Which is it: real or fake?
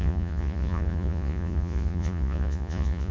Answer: fake